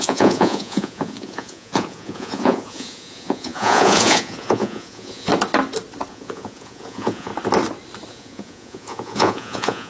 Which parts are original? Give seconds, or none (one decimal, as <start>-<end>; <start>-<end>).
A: 5.3-6.1; 7.3-8.1